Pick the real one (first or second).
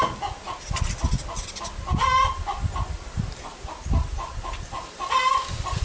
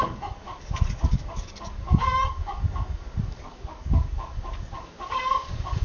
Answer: first